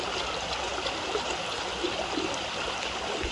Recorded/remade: recorded